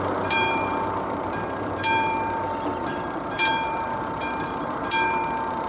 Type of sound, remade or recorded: remade